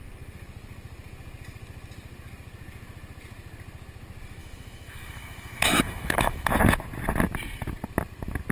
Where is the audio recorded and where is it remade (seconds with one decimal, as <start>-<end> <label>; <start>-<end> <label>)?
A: 0.0-4.4 recorded; 4.4-6.5 remade; 6.5-8.5 recorded